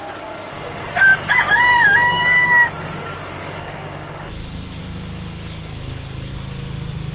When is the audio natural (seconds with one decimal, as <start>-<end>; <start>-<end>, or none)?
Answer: 6.3-7.1